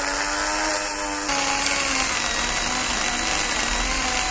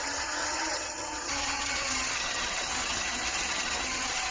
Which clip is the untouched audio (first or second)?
first